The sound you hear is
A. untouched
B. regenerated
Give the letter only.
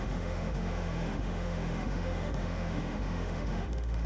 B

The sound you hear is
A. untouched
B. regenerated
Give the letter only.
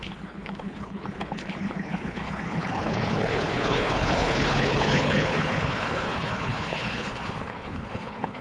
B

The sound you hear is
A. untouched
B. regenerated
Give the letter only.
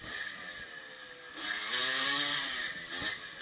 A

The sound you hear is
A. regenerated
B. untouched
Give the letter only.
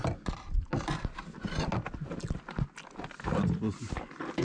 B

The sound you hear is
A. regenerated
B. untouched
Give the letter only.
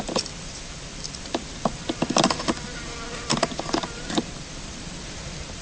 A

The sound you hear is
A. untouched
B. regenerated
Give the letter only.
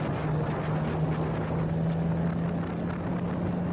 A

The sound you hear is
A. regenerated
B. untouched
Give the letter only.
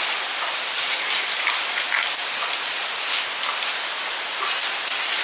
B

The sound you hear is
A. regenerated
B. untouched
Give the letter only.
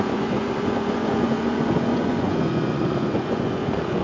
A